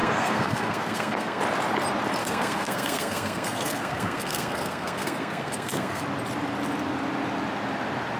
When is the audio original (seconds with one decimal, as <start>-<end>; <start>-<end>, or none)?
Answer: 1.4-2.2; 6.0-8.2